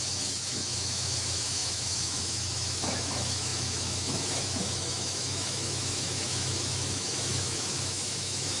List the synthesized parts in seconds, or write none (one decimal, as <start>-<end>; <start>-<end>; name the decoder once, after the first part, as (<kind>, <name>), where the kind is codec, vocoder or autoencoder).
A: 0.0-8.6 (autoencoder, DAC-VAE)